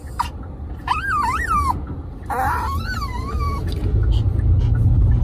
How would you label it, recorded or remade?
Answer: recorded